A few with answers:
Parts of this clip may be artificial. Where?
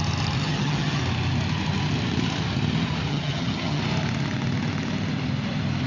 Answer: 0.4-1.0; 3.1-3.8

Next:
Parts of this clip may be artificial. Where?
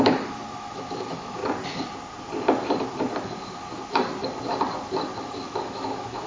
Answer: 0.0-1.4; 5.2-6.3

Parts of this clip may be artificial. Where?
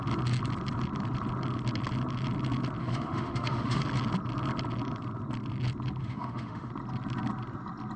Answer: 2.8-3.8; 6.0-6.7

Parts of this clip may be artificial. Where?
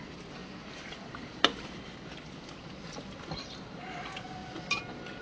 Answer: none